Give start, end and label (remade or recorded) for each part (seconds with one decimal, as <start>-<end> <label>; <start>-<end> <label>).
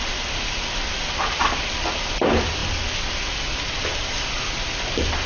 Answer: 0.0-2.6 remade; 2.6-3.7 recorded; 3.7-5.3 remade